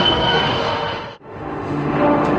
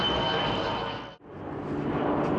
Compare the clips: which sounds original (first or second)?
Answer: second